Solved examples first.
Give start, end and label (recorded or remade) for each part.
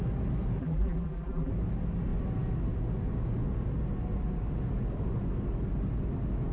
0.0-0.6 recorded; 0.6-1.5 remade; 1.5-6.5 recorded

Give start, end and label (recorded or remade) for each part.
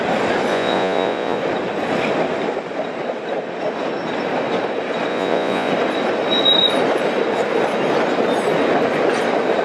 0.0-0.5 recorded; 0.5-1.4 remade; 1.4-5.1 recorded; 5.1-5.7 remade; 5.7-9.6 recorded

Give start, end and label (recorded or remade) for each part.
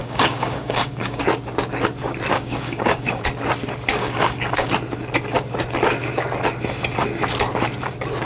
0.0-1.2 remade; 1.2-2.3 recorded; 2.3-3.2 remade; 3.2-3.9 recorded; 3.9-4.7 remade; 4.7-8.3 recorded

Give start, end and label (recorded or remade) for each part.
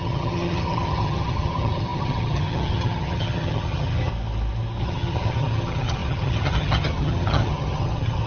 0.0-4.1 remade; 4.1-4.8 recorded; 4.8-8.3 remade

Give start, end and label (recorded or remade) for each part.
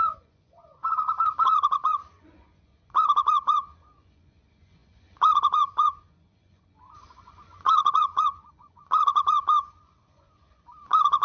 0.0-11.2 remade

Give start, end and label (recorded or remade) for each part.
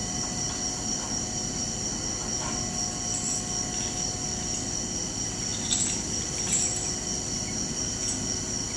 0.0-1.8 remade; 1.8-5.5 recorded; 5.5-7.2 remade; 7.2-8.8 recorded